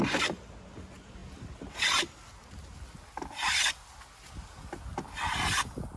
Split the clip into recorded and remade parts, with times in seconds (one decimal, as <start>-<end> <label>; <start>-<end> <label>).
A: 0.0-6.0 recorded